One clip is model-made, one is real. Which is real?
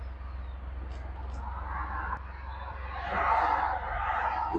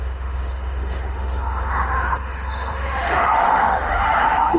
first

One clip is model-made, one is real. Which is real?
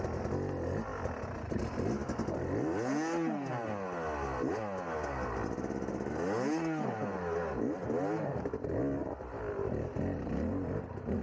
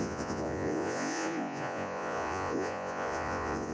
first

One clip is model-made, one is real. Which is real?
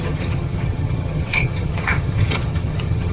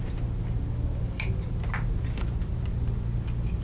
second